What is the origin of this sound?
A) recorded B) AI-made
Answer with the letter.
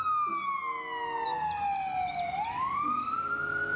A